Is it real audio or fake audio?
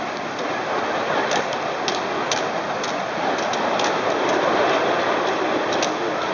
real